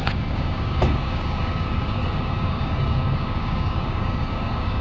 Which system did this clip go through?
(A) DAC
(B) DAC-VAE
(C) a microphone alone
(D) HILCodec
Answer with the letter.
A